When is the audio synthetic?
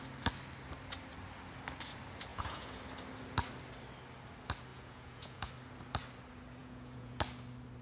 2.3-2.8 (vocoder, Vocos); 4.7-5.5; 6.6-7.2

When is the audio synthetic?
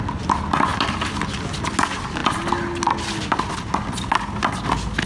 none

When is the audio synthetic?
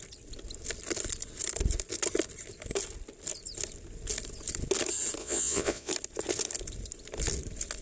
5.2-5.9 (vocoder, Vocos)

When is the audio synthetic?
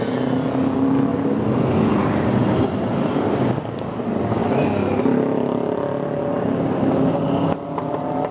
none